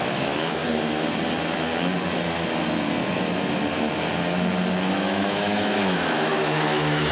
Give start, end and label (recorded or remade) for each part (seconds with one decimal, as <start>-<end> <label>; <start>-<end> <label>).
0.0-0.6 remade; 0.6-4.9 recorded; 4.9-7.1 remade